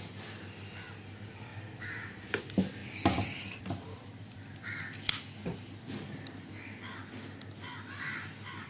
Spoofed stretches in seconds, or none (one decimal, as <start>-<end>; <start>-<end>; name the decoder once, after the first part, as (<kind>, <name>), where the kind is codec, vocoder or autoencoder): 2.8-4.8 (vocoder, BigVGAN v2)